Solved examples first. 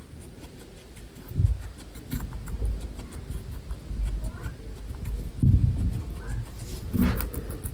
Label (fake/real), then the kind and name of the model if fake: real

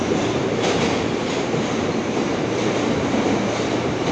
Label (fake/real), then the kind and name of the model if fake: fake, vocoder, BigVGAN v2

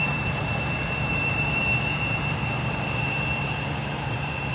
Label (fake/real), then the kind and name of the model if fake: fake, vocoder, BigVGAN v2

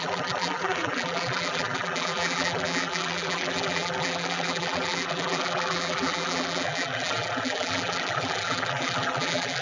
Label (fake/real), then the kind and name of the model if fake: fake, vocoder, BigVGAN v2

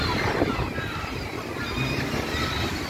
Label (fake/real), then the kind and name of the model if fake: fake, vocoder, BigVGAN v2